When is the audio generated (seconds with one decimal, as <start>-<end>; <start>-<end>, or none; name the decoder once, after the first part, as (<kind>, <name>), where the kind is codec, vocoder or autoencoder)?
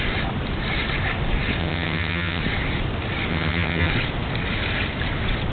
1.6-2.4 (vocoder, HiFi-GAN); 3.3-3.9